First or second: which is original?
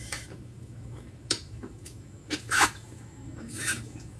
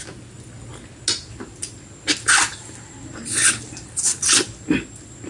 second